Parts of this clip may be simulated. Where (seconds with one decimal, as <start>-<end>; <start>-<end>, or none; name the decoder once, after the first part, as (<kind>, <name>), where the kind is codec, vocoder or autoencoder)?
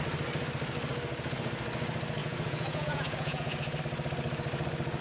2.2-3.8 (vocoder, Vocos)